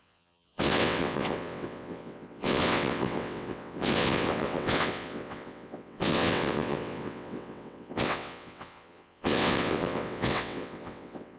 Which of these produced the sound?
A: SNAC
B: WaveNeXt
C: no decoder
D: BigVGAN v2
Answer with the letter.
B